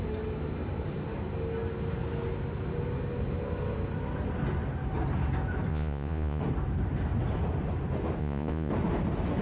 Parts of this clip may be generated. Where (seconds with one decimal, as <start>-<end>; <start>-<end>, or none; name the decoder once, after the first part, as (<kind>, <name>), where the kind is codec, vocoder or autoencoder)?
5.7-6.4 (vocoder, Vocos); 8.2-8.7